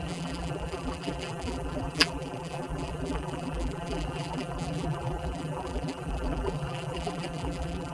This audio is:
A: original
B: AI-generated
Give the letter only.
B